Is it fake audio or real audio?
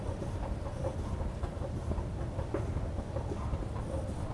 real